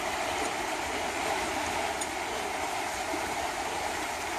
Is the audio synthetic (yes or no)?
no